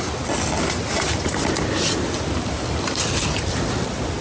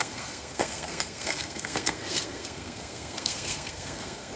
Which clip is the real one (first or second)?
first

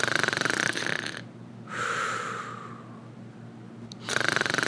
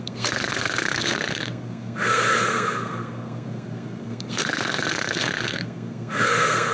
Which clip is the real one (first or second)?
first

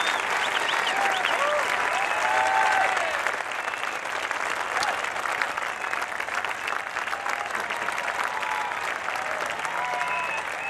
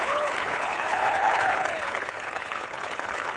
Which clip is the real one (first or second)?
first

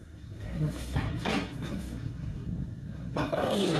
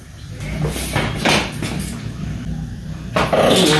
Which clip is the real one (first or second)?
second